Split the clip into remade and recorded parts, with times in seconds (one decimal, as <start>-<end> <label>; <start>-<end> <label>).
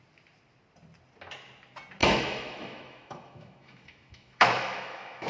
0.0-2.0 recorded; 2.0-5.3 remade